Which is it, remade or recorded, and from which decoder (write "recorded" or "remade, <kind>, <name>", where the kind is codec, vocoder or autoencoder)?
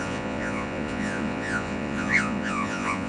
remade, vocoder, Vocos